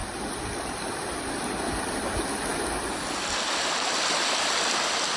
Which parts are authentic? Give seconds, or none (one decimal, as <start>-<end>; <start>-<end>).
0.0-5.2